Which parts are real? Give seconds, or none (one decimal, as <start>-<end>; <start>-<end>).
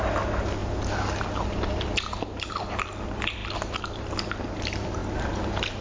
0.0-5.8